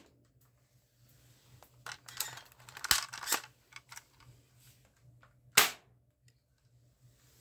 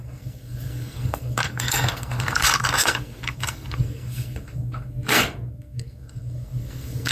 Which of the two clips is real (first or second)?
first